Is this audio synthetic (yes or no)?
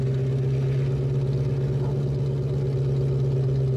no